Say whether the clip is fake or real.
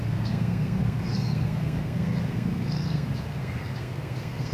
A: fake